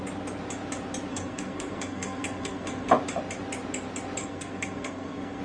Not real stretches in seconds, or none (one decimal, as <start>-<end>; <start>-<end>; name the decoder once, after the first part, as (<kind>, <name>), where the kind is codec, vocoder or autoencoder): 1.1-2.9 (codec, SNAC); 4.2-5.4